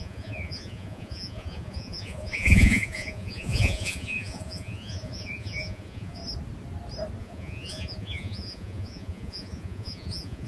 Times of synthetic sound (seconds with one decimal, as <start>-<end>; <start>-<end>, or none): 0.0-6.2; 7.2-10.5